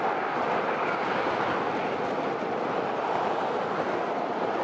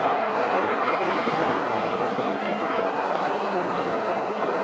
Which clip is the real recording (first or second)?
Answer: first